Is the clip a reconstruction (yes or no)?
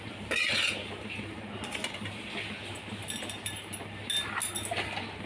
no